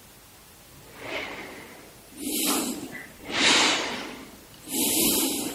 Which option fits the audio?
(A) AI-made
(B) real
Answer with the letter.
B